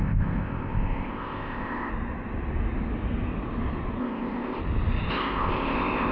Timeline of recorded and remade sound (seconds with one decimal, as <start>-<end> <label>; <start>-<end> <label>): 0.0-1.9 remade; 1.9-4.0 recorded; 4.0-4.6 remade; 4.6-5.1 recorded; 5.1-6.1 remade